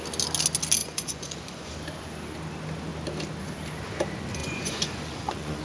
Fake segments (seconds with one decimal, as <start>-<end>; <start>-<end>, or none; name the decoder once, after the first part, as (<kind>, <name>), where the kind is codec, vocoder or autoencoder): 0.8-1.7 (vocoder, Vocos); 4.4-5.6